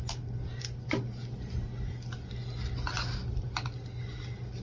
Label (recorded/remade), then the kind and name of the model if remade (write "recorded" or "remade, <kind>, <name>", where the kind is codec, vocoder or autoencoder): recorded